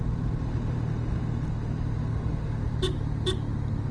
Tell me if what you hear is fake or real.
real